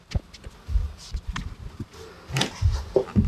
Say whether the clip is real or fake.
real